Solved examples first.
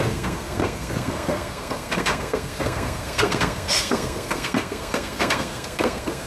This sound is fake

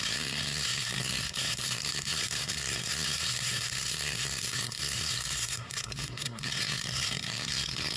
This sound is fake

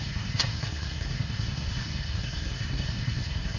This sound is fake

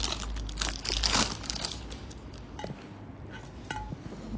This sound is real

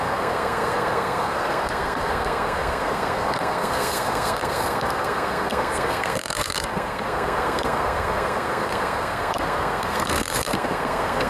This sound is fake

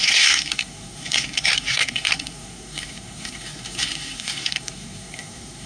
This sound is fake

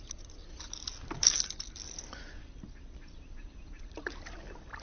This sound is real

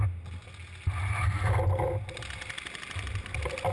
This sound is real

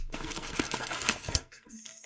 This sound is fake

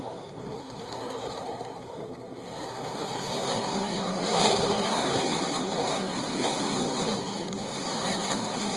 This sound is fake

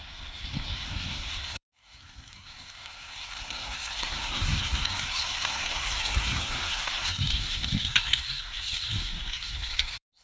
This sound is fake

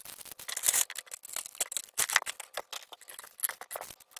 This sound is real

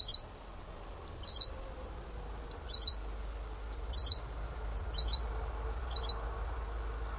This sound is real